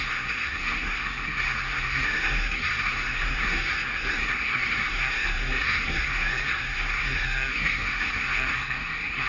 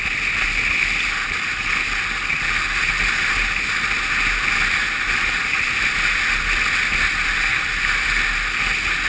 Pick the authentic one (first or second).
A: second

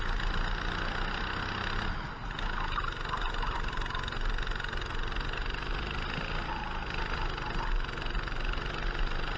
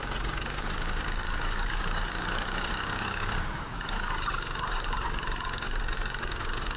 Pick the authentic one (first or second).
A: first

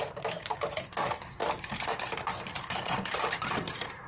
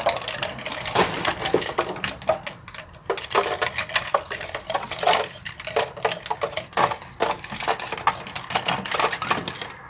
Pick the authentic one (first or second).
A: second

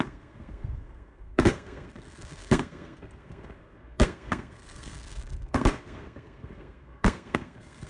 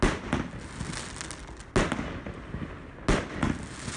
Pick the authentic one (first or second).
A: second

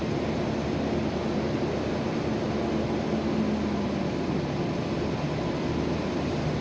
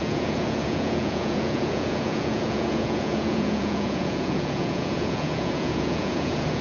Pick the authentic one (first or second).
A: first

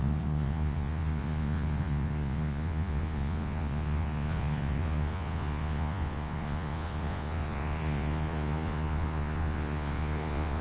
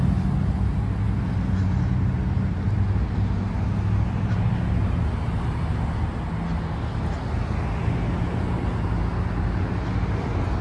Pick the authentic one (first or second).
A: second